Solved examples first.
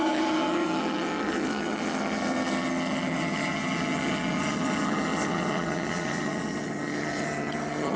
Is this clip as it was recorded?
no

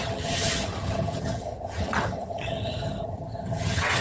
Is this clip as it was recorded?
no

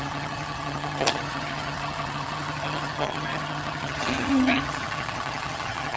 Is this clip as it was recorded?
no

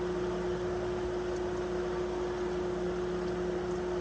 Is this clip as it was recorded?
yes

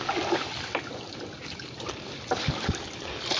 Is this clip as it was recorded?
yes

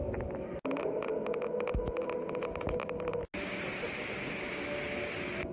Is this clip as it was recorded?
yes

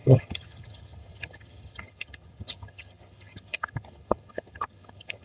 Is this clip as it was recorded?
no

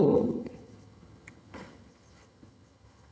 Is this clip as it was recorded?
no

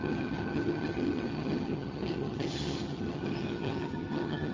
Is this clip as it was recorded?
no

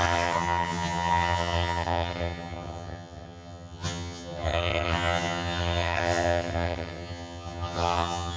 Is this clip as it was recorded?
no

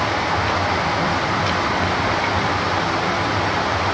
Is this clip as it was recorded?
yes